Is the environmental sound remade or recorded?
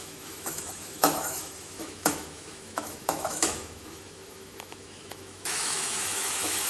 remade